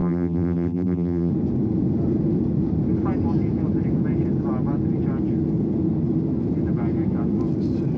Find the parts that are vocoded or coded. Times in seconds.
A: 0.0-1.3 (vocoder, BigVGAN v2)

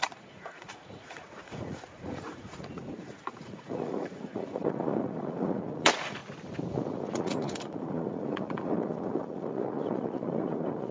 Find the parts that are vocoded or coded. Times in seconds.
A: 0.0-6.2 (vocoder, Vocos); 6.7-10.9